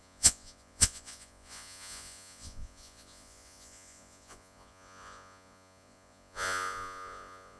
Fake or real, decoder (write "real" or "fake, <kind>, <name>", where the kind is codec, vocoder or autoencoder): fake, vocoder, Vocos